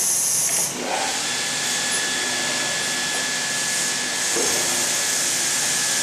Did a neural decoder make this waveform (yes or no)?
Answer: no